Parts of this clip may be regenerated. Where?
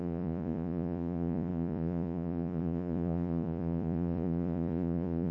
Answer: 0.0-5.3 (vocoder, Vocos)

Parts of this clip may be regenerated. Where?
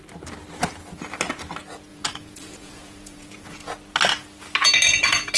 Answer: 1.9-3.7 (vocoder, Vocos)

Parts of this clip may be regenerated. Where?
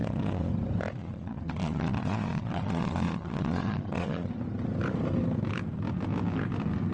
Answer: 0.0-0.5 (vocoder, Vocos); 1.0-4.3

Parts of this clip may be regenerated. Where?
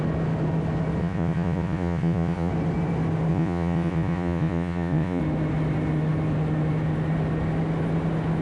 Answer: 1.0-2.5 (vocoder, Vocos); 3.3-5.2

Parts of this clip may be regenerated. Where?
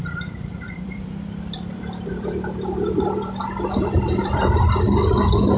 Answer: 0.0-3.4 (vocoder, BigVGAN v2); 4.0-4.7